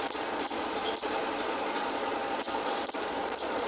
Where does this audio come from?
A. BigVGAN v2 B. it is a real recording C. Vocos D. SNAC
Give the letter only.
C